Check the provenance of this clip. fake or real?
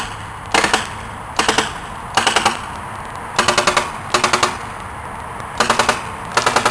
real